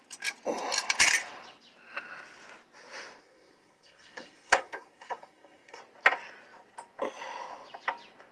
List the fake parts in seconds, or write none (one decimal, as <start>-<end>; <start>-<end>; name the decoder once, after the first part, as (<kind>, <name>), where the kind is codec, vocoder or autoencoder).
3.2-5.8 (codec, SNAC)